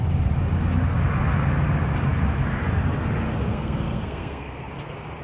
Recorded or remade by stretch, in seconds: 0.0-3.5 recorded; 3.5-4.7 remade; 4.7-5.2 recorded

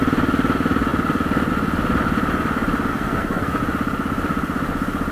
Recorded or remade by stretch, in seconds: 0.0-2.9 recorded; 2.9-3.6 remade; 3.6-5.1 recorded

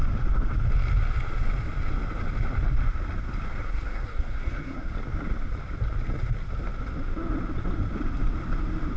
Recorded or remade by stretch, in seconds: 0.0-3.6 recorded; 3.6-4.9 remade; 4.9-9.0 recorded

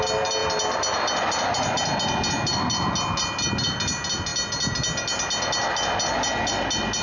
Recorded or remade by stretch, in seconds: 0.0-7.0 recorded

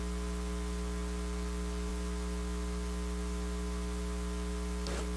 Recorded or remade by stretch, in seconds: 0.0-5.2 recorded

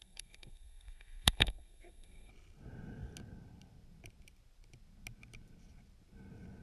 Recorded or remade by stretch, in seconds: 0.0-2.3 remade; 2.3-6.6 recorded

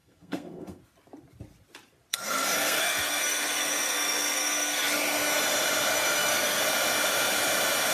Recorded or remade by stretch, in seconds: 0.0-0.8 remade; 0.8-2.1 recorded; 2.1-4.8 remade; 4.8-5.9 recorded; 5.9-6.6 remade; 6.6-7.9 recorded